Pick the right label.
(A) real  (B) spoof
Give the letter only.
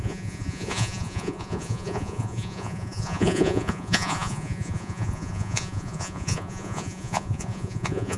B